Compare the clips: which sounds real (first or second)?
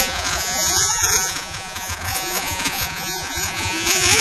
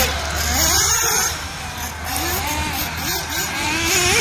second